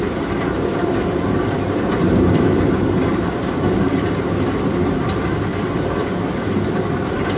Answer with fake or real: fake